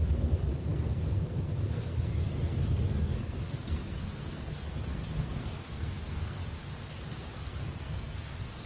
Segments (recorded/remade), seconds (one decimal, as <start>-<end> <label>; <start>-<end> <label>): 0.0-6.4 remade; 6.4-7.1 recorded; 7.1-8.7 remade

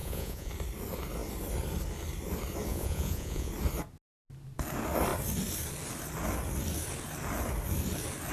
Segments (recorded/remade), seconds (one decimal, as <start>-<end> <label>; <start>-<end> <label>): 0.0-0.5 remade; 0.5-2.7 recorded; 2.7-3.5 remade; 3.5-8.3 recorded

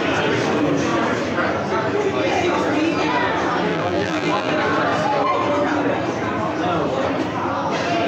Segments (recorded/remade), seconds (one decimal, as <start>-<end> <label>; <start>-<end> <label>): 0.0-3.7 recorded; 3.7-4.5 remade; 4.5-8.1 recorded

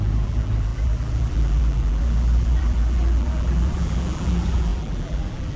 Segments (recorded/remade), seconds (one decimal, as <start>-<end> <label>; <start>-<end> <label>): 0.0-5.6 remade

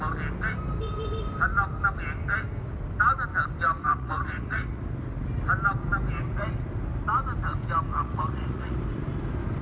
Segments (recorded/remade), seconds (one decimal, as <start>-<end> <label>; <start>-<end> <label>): 0.0-3.8 recorded; 3.8-4.8 remade; 4.8-7.9 recorded; 7.9-8.8 remade; 8.8-9.6 recorded

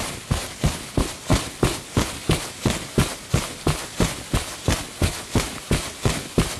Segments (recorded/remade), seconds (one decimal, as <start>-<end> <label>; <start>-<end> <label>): 0.0-6.6 recorded

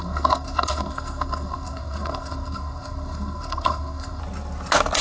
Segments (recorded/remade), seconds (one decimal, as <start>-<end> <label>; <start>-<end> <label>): 0.0-4.2 remade; 4.2-5.0 recorded

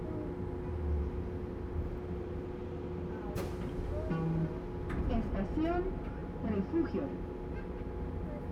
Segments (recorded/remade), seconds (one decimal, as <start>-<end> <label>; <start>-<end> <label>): 0.0-8.5 recorded